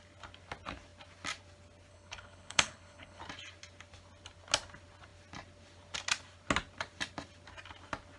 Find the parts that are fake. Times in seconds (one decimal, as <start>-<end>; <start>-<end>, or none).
1.9-3.2